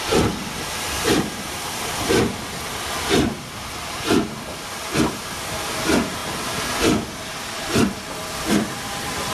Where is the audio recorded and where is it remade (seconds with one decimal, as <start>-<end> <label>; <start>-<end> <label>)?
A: 0.0-6.2 remade; 6.2-8.3 recorded; 8.3-9.3 remade